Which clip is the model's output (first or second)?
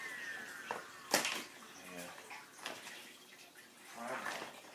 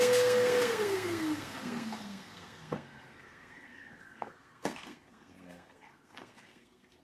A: second